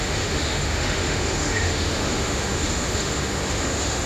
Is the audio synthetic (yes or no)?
yes